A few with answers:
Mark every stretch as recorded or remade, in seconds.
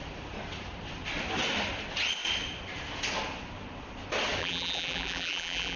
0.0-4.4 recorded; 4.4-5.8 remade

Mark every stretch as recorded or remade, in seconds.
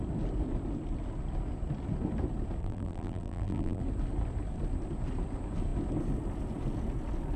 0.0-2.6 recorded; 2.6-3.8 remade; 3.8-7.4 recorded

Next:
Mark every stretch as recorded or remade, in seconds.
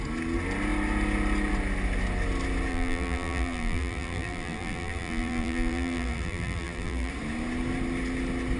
0.0-2.7 recorded; 2.7-7.1 remade; 7.1-8.6 recorded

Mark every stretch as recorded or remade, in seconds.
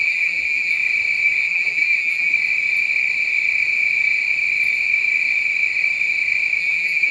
0.0-0.8 remade; 0.8-1.4 recorded; 1.4-2.3 remade; 2.3-6.6 recorded; 6.6-7.1 remade